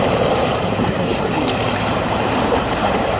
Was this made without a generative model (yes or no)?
no